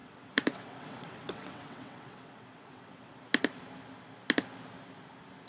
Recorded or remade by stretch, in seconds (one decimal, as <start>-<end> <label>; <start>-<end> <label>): 0.0-3.2 remade; 3.2-5.5 recorded